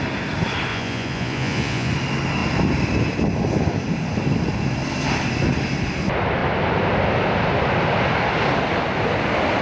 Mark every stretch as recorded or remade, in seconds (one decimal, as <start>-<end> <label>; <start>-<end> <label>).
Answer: 0.0-0.7 recorded; 0.7-1.9 remade; 1.9-9.6 recorded